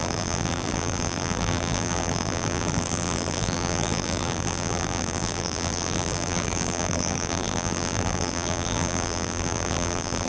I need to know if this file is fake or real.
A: fake